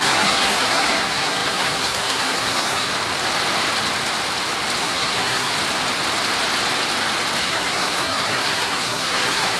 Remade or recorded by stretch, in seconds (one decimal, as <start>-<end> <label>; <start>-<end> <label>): 0.0-2.9 remade; 2.9-4.8 recorded; 4.8-5.5 remade; 5.5-7.4 recorded; 7.4-9.6 remade